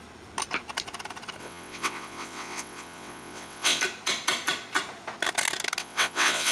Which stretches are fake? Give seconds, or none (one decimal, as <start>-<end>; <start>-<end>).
1.4-3.8; 5.8-6.5